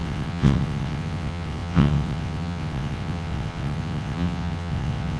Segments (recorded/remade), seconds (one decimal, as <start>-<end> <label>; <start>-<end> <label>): 0.0-5.2 remade